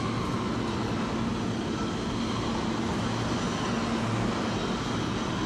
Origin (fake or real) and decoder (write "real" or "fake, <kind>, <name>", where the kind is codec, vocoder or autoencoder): real